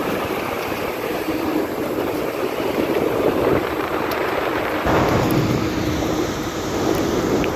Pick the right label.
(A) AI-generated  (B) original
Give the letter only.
A